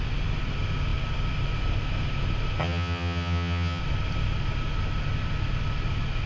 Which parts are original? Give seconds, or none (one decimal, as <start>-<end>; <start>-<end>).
0.0-2.6; 3.8-6.3